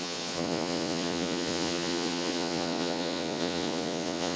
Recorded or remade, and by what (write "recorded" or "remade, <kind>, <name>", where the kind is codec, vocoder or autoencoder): remade, vocoder, Vocos